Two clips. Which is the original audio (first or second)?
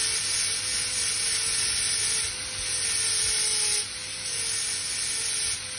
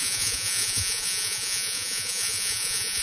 first